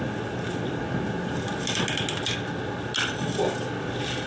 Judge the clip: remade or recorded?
recorded